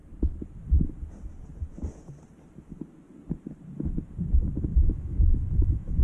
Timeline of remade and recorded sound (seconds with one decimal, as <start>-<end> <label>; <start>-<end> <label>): 0.0-4.7 recorded; 4.7-6.0 remade